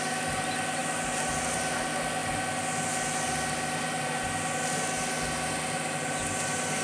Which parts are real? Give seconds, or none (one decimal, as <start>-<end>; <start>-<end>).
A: 0.0-6.8